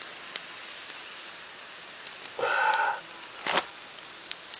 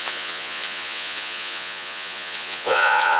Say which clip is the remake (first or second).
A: second